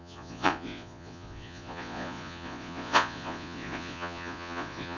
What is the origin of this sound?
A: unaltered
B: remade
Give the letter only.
B